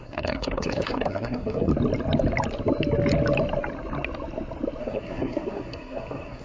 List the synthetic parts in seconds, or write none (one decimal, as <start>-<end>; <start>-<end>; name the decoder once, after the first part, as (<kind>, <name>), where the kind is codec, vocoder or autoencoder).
0.0-1.7 (codec, SNAC); 4.8-6.4